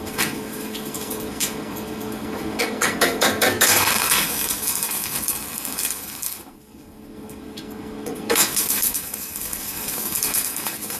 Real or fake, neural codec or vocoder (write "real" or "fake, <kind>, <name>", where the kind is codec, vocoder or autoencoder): fake, codec, SNAC